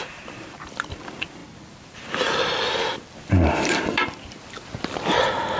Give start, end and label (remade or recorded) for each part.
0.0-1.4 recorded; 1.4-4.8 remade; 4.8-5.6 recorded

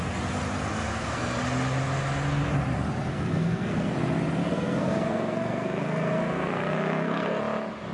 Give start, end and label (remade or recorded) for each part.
0.0-0.9 recorded; 0.9-1.4 remade; 1.4-3.1 recorded; 3.1-3.9 remade; 3.9-4.4 recorded; 4.4-7.4 remade; 7.4-7.9 recorded

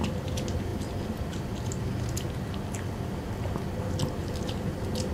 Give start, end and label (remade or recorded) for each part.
0.0-4.2 recorded; 4.2-5.1 remade

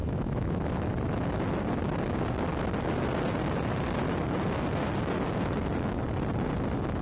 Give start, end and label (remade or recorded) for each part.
0.0-0.9 remade; 0.9-7.0 recorded

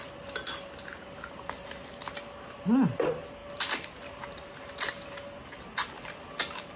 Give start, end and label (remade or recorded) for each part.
0.0-6.8 recorded

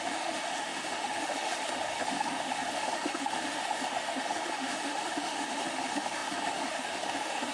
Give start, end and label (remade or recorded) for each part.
0.0-7.5 remade

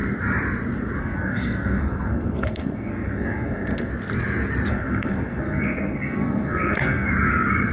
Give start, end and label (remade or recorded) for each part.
0.0-1.0 recorded; 1.0-3.9 remade; 3.9-4.7 recorded; 4.7-7.1 remade; 7.1-7.7 recorded